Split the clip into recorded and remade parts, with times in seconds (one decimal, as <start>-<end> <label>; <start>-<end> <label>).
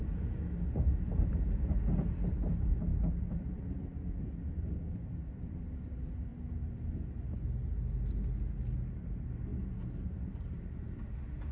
0.0-11.5 recorded